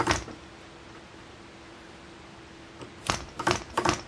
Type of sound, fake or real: real